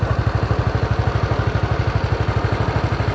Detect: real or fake real